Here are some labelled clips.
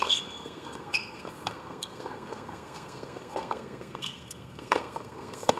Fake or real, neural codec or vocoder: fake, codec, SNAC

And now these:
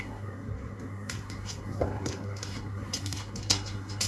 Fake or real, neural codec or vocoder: fake, codec, SNAC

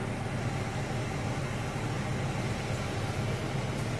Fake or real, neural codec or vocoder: real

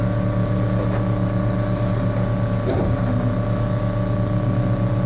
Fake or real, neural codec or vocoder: real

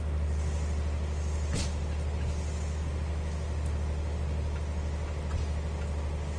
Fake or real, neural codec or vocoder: real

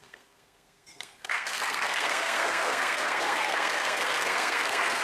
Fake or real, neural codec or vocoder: fake, codec, SNAC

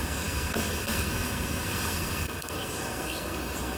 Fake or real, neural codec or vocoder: fake, codec, SNAC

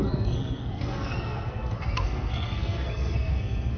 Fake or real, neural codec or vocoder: fake, codec, SNAC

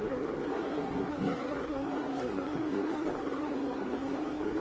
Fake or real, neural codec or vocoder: fake, codec, SNAC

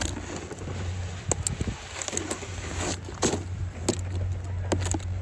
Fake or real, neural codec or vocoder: real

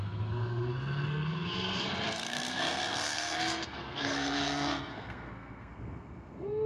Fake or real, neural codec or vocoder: fake, codec, SNAC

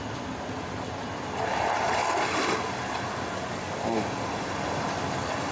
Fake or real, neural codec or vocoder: real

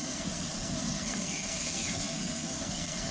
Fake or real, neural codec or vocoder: fake, codec, SNAC